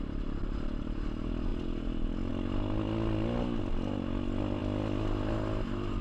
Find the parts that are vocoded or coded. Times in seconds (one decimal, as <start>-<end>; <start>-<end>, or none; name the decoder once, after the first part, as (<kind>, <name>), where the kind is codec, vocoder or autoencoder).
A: none